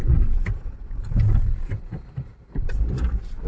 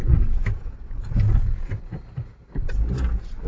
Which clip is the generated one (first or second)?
first